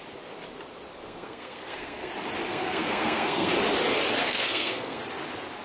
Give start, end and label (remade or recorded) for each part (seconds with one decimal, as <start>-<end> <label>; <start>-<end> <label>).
0.0-1.0 recorded; 1.0-2.1 remade; 2.1-2.5 recorded; 2.5-3.5 remade; 3.5-4.2 recorded; 4.2-5.0 remade; 5.0-5.6 recorded